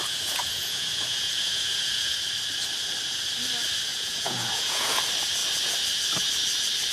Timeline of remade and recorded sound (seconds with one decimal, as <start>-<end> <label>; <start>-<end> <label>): 0.0-2.2 remade; 2.2-3.9 recorded; 3.9-5.0 remade; 5.0-6.9 recorded